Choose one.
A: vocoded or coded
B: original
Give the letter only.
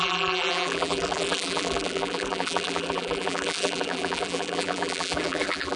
A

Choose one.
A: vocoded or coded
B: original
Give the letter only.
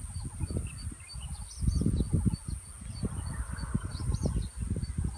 B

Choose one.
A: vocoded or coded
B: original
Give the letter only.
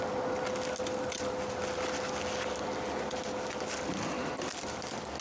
B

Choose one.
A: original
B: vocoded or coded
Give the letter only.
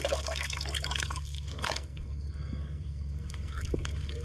B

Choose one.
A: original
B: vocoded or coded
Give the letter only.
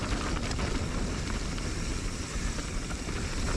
A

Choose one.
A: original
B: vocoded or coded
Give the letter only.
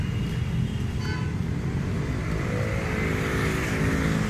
A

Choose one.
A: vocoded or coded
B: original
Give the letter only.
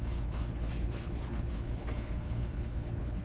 A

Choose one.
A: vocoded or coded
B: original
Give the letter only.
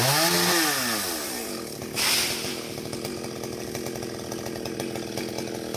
B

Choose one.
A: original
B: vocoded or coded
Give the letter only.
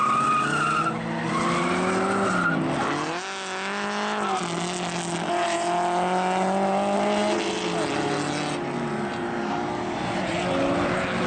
A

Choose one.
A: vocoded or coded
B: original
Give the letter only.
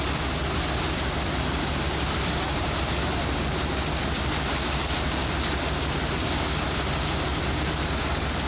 B